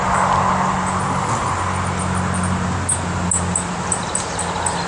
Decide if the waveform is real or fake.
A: real